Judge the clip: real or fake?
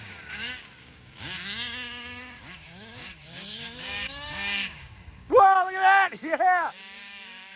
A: fake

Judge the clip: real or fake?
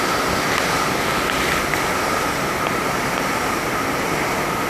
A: real